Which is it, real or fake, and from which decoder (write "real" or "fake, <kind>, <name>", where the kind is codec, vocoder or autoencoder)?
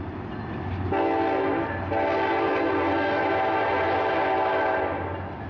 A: real